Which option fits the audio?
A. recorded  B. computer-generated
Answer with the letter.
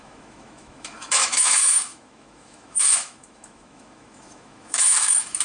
B